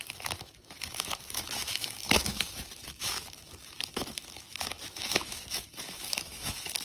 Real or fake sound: fake